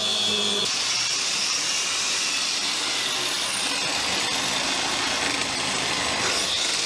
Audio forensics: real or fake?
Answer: real